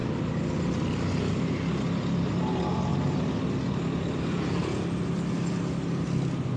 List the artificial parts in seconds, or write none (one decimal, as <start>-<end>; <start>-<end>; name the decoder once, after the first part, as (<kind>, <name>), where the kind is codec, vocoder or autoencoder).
none